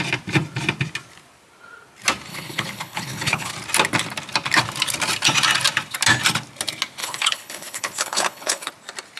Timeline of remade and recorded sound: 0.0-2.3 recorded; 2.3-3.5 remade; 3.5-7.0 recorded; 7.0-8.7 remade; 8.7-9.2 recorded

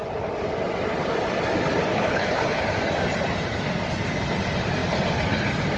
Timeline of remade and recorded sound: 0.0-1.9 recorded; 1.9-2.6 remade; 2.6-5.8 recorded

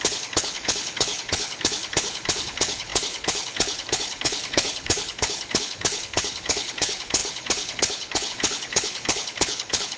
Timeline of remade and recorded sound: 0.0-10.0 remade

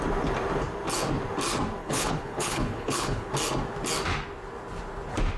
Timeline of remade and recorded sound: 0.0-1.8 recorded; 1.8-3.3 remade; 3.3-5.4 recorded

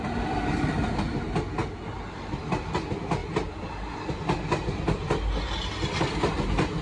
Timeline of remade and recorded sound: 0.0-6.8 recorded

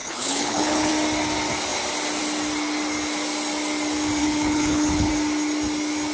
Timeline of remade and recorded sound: 0.0-0.9 remade; 0.9-4.2 recorded; 4.2-5.1 remade; 5.1-6.1 recorded